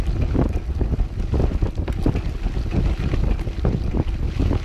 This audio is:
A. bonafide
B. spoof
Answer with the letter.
A